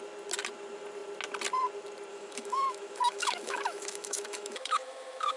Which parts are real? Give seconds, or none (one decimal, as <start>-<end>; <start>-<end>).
0.0-2.1

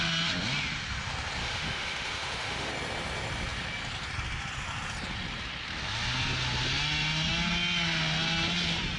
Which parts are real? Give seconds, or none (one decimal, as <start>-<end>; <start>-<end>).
0.0-1.4; 2.7-9.0

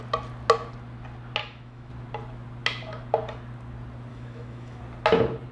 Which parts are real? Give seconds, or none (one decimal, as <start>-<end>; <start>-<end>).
0.0-1.4; 1.9-4.1; 4.8-5.5

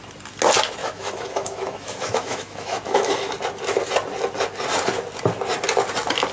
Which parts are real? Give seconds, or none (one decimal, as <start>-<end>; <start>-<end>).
0.0-0.8; 3.3-6.3

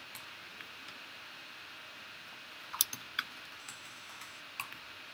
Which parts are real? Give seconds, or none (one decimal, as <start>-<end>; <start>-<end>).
0.0-3.6; 4.4-5.1